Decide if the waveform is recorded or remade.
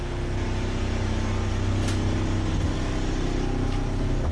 recorded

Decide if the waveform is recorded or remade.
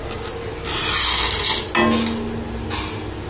recorded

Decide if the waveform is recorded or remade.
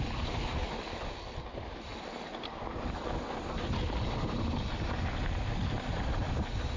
recorded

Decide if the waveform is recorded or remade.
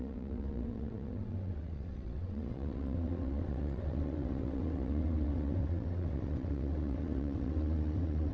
remade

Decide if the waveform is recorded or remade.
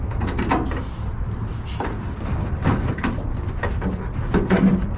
recorded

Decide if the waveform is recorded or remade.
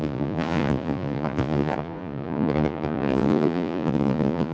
remade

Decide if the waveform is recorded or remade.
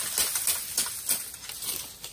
recorded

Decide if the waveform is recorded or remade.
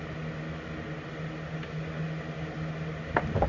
recorded